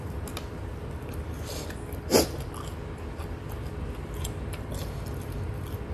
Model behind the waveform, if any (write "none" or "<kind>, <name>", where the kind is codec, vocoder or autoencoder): none